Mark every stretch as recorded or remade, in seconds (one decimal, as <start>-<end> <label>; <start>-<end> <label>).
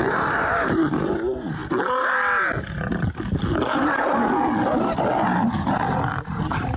0.0-1.6 remade; 1.6-5.7 recorded; 5.7-6.8 remade